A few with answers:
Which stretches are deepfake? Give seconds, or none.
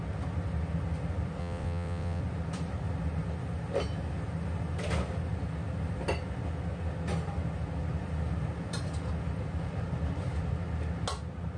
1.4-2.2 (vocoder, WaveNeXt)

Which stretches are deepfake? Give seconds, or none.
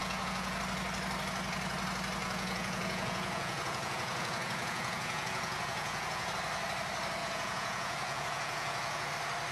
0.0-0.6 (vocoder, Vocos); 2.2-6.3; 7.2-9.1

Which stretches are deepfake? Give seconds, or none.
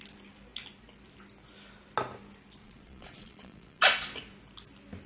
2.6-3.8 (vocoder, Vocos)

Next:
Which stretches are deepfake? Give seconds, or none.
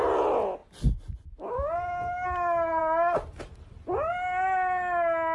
none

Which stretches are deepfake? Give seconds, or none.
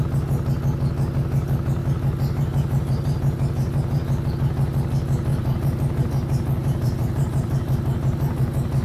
1.8-4.3 (vocoder, BigVGAN v2); 5.3-6.0; 6.6-8.4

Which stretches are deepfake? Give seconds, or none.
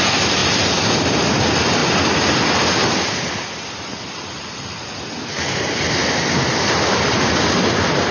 none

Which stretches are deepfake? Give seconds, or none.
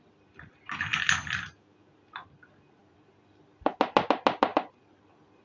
2.8-3.7 (vocoder, BigVGAN v2); 4.5-5.4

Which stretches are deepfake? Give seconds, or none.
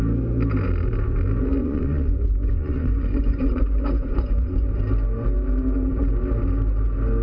1.6-4.7 (vocoder, Vocos)